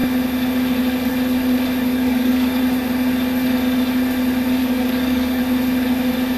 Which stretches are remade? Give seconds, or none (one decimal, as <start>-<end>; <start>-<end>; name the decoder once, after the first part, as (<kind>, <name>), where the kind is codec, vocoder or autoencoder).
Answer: 1.9-2.6 (codec, DAC); 4.6-5.4